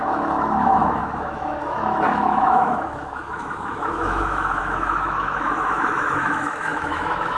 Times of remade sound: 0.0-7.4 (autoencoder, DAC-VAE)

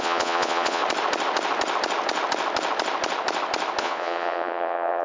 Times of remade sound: 0.0-0.8 (vocoder, Vocos); 3.8-5.0

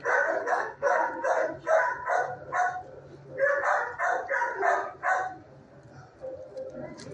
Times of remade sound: 0.4-1.1 (codec, SNAC)

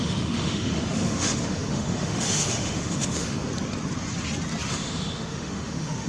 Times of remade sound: 0.0-3.5 (autoencoder, DAC-VAE); 4.7-6.1

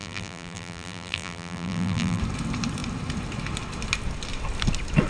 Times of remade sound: 0.0-2.2 (vocoder, BigVGAN v2)

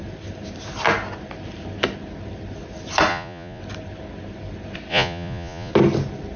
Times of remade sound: 3.1-3.6 (vocoder, Vocos); 4.9-5.7

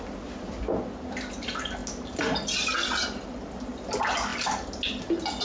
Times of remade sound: none